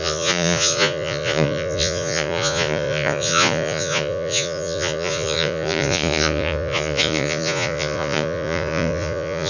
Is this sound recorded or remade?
remade